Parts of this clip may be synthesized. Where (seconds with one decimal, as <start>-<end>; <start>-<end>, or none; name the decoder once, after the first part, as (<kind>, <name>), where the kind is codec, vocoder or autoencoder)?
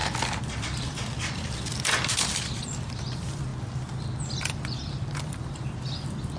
0.0-3.5 (vocoder, BigVGAN v2); 4.4-6.4